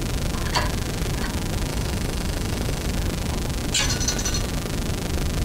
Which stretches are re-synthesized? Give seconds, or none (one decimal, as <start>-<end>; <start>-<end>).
1.7-2.9